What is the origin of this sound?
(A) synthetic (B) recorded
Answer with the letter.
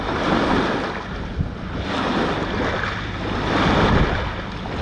B